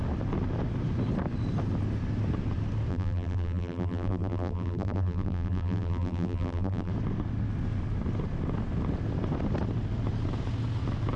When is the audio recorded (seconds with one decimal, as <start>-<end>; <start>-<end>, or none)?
0.0-2.9; 6.9-11.2